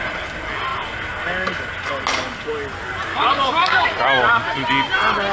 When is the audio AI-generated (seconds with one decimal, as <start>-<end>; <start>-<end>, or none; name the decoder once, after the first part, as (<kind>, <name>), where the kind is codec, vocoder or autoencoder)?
3.1-3.9 (codec, DAC)